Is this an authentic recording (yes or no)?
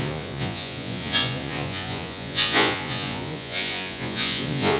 no